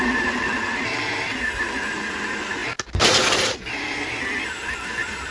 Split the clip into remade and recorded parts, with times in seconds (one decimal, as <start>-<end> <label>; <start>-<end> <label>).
0.0-5.3 recorded